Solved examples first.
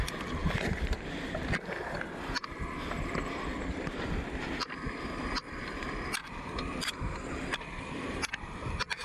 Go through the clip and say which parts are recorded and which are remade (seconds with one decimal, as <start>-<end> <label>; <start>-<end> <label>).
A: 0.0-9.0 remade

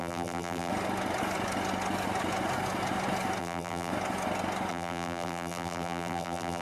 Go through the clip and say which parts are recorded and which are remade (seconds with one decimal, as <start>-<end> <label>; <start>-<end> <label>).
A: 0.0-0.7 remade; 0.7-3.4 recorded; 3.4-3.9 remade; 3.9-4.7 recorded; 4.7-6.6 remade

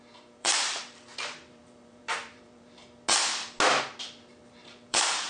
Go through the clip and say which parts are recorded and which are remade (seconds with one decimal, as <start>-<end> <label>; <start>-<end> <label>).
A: 0.0-2.8 remade; 2.8-4.3 recorded; 4.3-5.3 remade